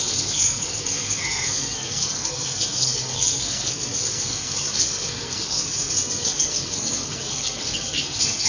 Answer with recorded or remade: remade